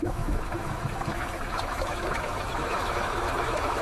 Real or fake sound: fake